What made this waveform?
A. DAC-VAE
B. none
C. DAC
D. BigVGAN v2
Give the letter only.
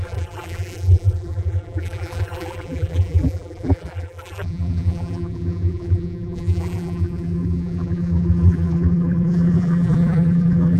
D